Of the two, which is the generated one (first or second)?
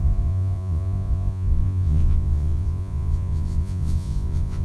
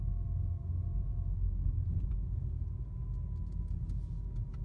first